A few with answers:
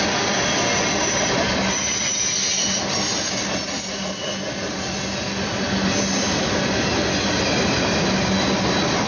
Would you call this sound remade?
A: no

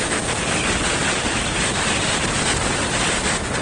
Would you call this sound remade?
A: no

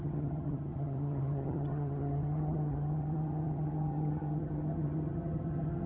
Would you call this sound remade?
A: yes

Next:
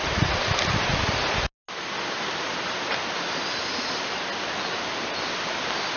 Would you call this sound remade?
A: no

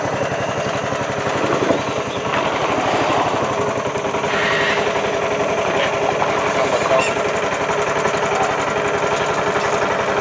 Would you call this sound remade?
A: no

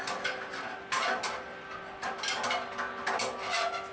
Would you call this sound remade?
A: no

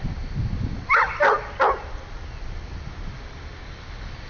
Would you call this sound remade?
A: no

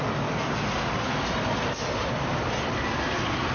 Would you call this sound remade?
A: no